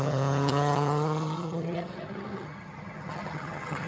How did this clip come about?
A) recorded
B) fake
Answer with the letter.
B